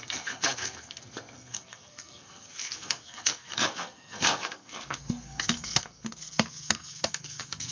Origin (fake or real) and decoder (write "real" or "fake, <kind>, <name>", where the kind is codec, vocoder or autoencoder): fake, codec, SNAC